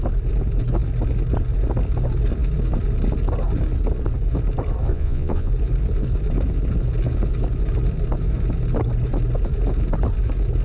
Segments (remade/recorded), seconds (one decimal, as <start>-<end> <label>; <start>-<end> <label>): 0.0-4.9 recorded; 4.9-5.5 remade; 5.5-10.6 recorded

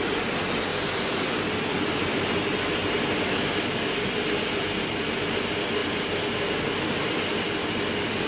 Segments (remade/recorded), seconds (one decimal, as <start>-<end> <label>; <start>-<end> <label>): 0.0-0.7 recorded; 0.7-1.3 remade; 1.3-2.8 recorded; 2.8-3.7 remade; 3.7-8.3 recorded

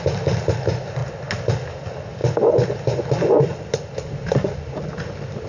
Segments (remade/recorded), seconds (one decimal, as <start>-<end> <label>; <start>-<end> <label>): 0.0-5.5 recorded